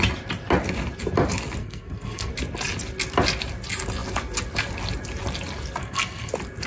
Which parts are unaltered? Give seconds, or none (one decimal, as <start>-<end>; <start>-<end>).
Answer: 0.0-1.6; 2.3-5.8; 6.3-6.7